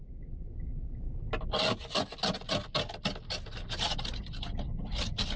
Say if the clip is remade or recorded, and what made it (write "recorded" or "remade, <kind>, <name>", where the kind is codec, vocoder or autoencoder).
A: recorded